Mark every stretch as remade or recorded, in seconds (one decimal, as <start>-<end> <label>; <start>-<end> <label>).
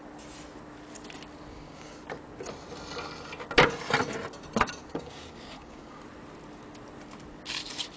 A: 0.0-1.5 recorded; 1.5-2.0 remade; 2.0-4.8 recorded; 4.8-6.0 remade; 6.0-8.0 recorded